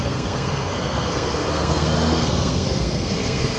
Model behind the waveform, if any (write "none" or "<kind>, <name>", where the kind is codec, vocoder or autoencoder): codec, SNAC